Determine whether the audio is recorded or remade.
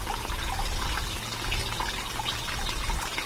recorded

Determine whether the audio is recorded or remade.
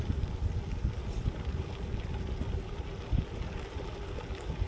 recorded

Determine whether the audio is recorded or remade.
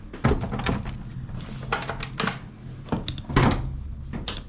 recorded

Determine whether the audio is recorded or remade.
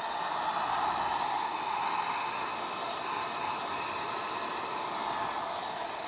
recorded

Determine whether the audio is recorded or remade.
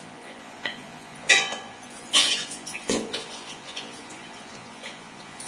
remade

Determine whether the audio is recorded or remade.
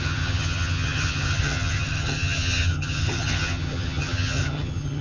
remade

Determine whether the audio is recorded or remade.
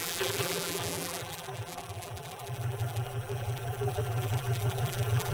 remade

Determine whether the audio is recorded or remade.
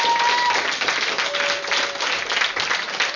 recorded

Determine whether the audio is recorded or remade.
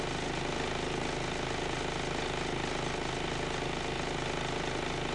recorded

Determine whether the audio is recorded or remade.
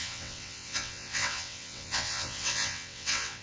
remade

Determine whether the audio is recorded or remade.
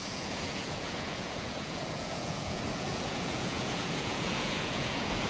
remade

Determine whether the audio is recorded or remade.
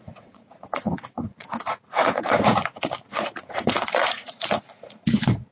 remade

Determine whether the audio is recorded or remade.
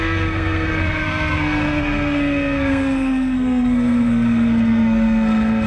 remade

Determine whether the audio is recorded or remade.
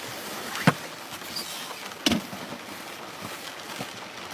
recorded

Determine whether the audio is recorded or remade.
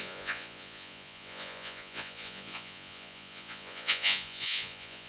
remade